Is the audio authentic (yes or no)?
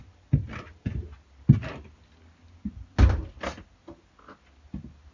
yes